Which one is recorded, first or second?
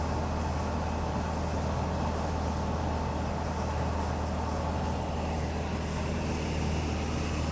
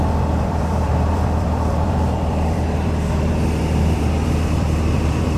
first